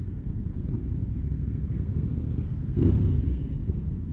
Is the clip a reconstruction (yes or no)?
yes